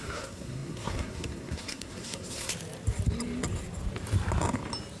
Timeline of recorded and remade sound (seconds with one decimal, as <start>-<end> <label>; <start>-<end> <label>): 0.0-2.5 remade; 2.5-5.0 recorded